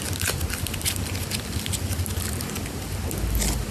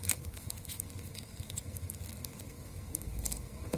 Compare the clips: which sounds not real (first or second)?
second